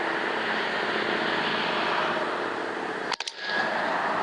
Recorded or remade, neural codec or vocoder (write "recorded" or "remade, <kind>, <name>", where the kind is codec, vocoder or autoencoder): recorded